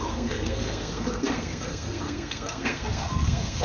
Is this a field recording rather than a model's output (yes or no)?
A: no